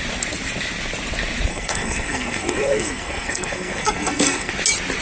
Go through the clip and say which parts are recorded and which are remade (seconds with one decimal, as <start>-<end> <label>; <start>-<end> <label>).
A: 0.0-1.5 recorded; 1.5-4.5 remade; 4.5-5.0 recorded